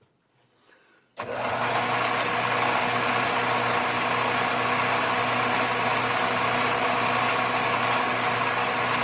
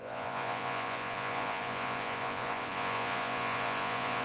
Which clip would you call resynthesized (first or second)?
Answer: second